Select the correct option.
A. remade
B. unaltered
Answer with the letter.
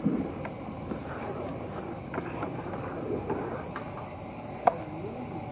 B